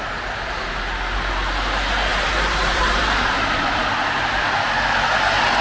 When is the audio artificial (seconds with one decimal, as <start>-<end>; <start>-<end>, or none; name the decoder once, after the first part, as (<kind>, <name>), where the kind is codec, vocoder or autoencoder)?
2.1-3.6 (vocoder, BigVGAN v2)